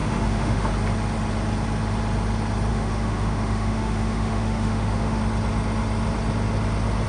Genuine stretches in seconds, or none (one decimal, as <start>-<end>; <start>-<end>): 0.7-2.7; 5.2-7.1